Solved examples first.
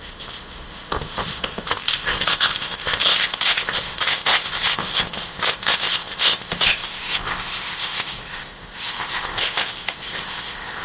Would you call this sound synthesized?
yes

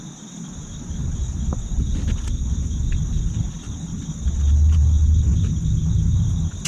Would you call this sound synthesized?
no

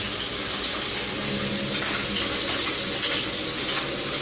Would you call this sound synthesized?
no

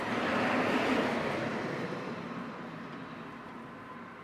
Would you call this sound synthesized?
no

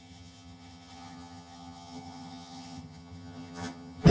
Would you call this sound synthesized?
yes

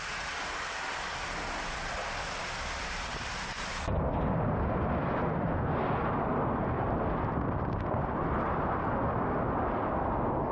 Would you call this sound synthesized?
no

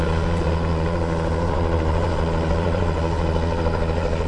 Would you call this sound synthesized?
yes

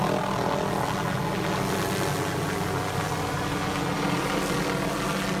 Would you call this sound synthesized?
no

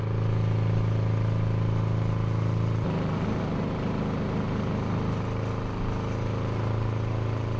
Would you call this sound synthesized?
no